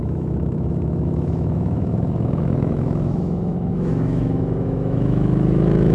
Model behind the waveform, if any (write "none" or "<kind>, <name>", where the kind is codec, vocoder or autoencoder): autoencoder, DAC-VAE